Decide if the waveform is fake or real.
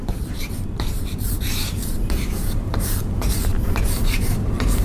fake